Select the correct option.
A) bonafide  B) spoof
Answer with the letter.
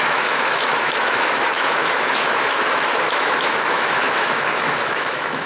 B